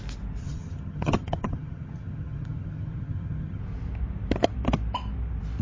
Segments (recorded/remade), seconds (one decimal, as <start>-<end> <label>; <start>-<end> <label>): 0.0-0.4 recorded; 0.4-3.6 remade; 3.6-5.6 recorded